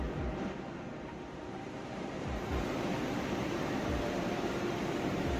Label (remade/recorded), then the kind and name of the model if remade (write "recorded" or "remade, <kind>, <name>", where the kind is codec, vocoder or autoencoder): remade, vocoder, BigVGAN v2